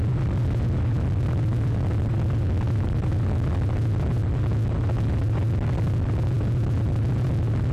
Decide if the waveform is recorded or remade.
recorded